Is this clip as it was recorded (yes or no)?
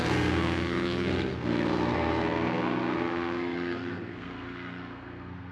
no